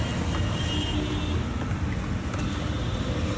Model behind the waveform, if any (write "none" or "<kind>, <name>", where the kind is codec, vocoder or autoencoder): none